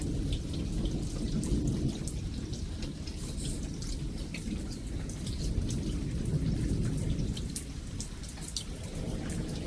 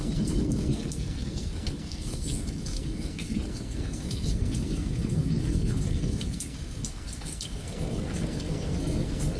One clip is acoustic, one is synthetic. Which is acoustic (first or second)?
first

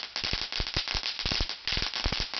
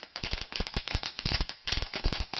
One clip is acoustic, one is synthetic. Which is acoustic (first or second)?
first